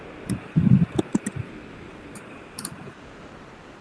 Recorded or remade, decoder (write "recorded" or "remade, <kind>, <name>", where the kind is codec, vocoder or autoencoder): recorded